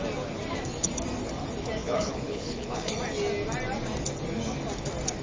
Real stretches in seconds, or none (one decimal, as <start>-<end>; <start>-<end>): 0.0-1.8; 3.0-5.2